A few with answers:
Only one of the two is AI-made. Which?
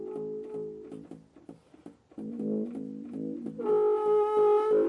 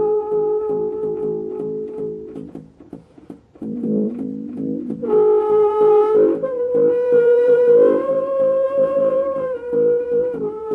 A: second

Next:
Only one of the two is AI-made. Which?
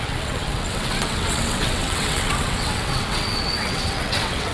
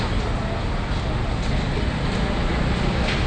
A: first